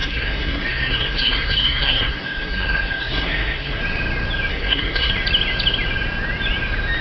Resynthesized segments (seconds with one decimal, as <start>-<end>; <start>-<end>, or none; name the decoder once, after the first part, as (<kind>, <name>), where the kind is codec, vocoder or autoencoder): 0.0-3.8 (codec, SNAC); 4.5-5.1